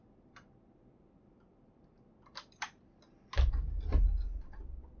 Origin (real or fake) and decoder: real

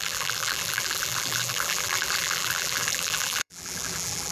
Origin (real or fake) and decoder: fake, vocoder, BigVGAN v2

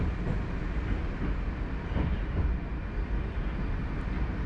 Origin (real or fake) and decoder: real